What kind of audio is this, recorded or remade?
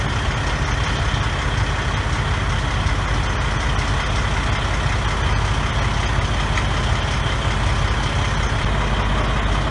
recorded